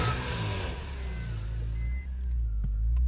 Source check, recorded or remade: recorded